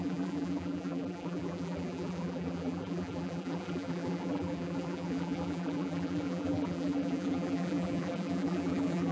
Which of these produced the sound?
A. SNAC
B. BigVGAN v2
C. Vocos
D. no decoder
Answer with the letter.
B